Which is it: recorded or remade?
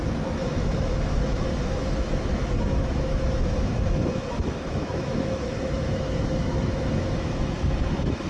remade